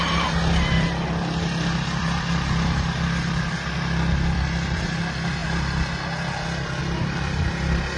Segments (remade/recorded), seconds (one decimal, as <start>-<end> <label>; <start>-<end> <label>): 0.0-5.4 remade; 5.4-6.8 recorded; 6.8-8.0 remade